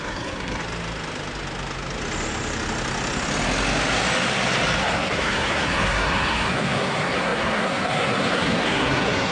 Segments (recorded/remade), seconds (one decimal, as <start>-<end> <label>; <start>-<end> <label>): 0.0-0.6 remade; 0.6-4.8 recorded; 4.8-9.3 remade